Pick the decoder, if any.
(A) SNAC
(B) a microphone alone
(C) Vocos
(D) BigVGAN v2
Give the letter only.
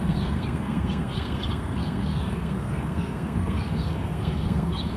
A